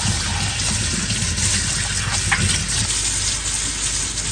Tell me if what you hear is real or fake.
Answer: real